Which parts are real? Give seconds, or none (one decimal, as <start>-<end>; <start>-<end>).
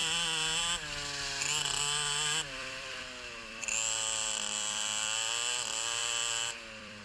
0.0-2.6; 5.3-6.0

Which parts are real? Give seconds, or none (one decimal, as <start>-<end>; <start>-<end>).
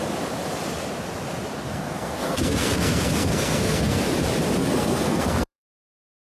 0.0-1.7; 4.0-4.6